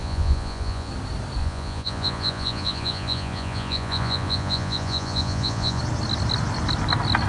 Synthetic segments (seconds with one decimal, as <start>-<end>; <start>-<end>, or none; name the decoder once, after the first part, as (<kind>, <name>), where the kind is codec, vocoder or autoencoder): 0.0-0.9 (vocoder, Vocos); 1.4-5.8